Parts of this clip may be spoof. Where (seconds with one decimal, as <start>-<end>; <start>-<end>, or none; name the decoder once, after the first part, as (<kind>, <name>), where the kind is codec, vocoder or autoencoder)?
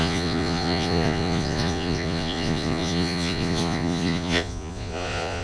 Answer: 0.0-5.4 (vocoder, Vocos)